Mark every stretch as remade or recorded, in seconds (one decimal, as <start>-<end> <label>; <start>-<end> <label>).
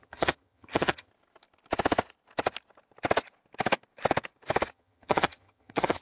0.0-1.1 remade; 1.1-4.7 recorded; 4.7-6.0 remade